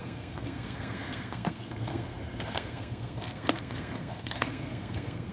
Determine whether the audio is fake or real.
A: fake